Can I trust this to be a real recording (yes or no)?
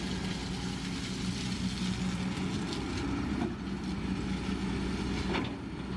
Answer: yes